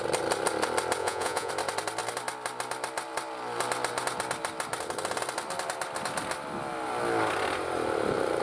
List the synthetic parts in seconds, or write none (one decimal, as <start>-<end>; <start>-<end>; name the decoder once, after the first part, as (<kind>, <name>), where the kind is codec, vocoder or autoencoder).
1.0-1.5 (vocoder, Vocos)